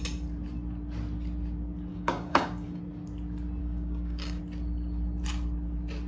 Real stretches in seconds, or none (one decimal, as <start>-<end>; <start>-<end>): 0.0-1.9; 2.8-3.6; 4.4-6.1